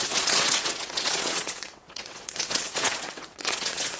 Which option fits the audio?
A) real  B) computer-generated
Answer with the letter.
B